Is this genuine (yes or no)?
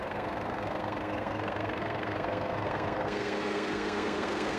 no